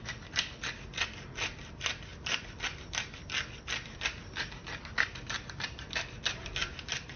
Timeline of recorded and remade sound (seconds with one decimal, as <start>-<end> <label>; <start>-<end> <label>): 0.0-7.2 recorded